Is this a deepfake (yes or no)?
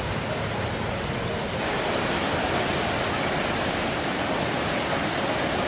no